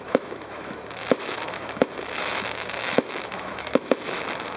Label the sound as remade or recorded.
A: remade